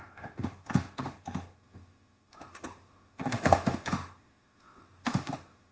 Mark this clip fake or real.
fake